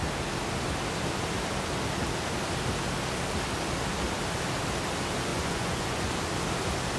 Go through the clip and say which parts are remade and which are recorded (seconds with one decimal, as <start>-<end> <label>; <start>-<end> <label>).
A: 0.0-5.3 recorded; 5.3-6.1 remade; 6.1-7.0 recorded